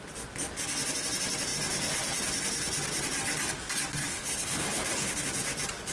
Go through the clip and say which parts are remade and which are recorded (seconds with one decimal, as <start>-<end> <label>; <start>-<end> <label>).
0.0-4.0 recorded; 4.0-5.2 remade; 5.2-5.9 recorded